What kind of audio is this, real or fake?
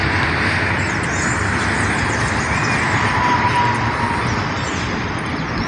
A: real